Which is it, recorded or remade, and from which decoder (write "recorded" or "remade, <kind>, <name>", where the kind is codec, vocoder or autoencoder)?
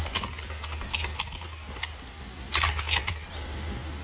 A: recorded